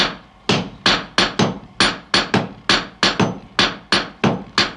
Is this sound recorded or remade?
recorded